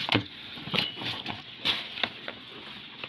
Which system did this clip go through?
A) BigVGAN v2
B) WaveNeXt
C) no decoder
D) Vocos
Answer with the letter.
D